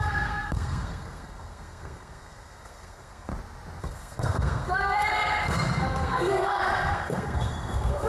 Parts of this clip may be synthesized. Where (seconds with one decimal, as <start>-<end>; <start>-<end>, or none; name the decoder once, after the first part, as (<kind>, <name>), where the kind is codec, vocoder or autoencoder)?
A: 0.0-3.3 (codec, SNAC); 3.8-8.1